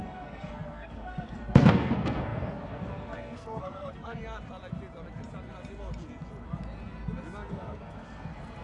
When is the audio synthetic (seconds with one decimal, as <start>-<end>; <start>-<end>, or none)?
0.0-4.2; 7.5-8.6